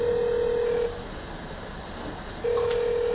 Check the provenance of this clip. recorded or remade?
recorded